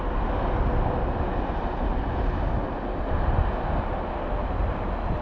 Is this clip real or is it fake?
real